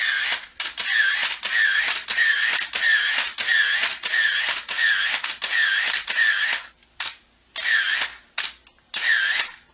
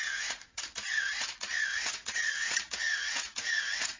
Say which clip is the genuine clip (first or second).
first